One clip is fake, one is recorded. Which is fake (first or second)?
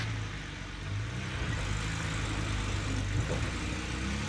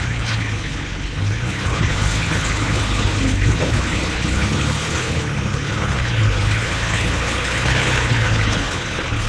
second